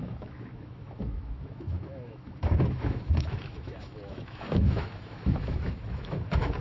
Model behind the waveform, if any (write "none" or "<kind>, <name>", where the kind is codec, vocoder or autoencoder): autoencoder, DAC-VAE